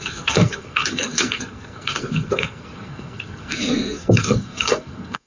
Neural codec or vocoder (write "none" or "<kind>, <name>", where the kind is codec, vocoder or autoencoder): codec, SNAC